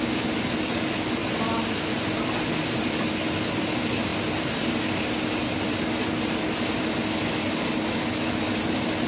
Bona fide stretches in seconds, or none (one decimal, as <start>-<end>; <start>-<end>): 0.0-9.1